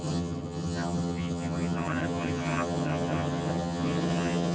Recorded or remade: remade